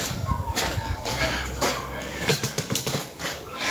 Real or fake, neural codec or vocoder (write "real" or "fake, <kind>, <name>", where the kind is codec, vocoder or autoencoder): fake, codec, DAC